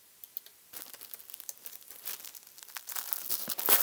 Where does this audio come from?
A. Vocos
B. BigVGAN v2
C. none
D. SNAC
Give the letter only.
C